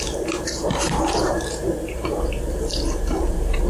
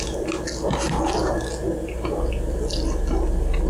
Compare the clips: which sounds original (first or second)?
second